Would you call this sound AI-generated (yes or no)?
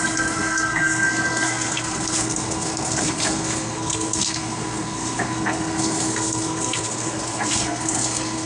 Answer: yes